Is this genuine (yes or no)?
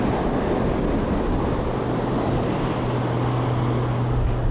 yes